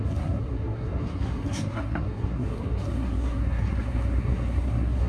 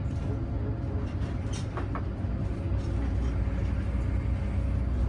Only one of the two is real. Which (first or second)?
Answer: second